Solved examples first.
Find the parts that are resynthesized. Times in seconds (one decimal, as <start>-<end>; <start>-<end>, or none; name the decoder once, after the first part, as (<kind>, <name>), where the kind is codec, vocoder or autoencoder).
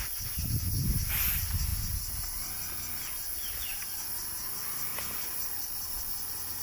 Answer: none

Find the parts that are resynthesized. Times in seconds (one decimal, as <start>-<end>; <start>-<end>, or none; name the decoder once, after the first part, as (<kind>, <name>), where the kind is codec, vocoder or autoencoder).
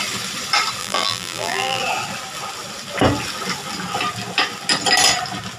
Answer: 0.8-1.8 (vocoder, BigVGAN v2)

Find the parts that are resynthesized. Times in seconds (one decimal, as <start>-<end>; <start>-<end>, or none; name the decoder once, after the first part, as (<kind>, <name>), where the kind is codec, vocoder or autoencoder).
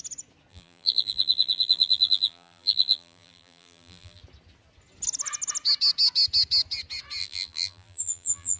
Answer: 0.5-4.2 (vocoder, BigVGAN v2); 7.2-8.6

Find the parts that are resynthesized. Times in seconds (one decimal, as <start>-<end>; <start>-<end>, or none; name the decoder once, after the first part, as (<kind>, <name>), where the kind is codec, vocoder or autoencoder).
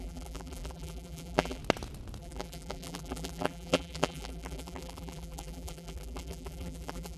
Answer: 0.0-1.6 (vocoder, BigVGAN v2); 2.2-7.2